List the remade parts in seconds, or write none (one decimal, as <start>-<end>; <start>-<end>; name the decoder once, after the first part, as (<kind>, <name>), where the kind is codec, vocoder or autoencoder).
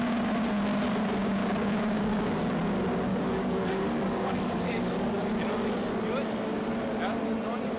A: 1.4-2.7 (codec, DAC); 3.1-5.2